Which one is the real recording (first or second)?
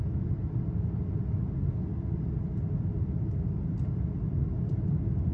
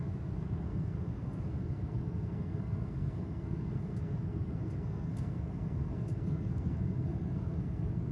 first